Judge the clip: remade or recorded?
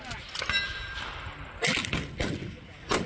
recorded